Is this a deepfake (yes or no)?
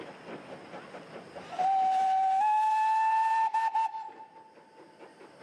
no